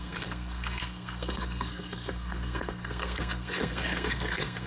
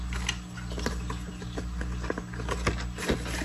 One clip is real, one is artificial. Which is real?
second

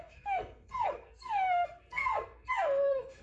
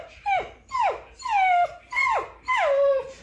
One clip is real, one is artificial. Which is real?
second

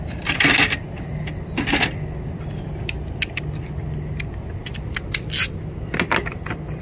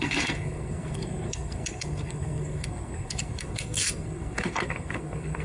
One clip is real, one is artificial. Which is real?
first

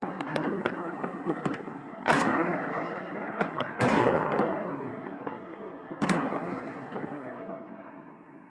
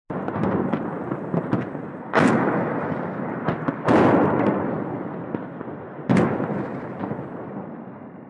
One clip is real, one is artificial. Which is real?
second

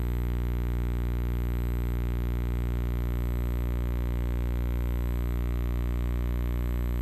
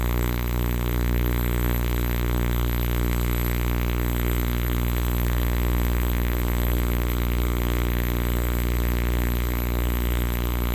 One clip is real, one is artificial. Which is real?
first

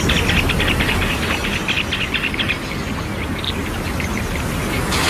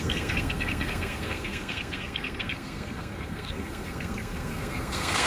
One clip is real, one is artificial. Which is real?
first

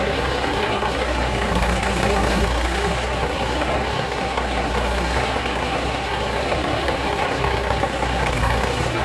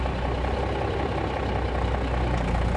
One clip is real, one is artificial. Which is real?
second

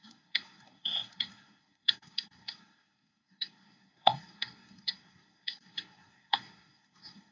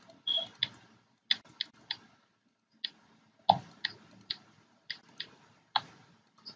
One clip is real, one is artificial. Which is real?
second